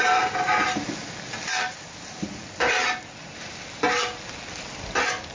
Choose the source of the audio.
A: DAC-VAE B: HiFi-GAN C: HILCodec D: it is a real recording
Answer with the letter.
D